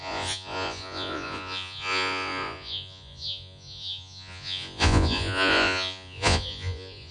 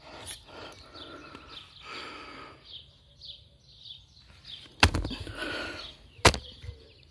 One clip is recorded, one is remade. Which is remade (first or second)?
first